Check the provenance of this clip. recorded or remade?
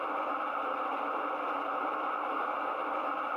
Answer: recorded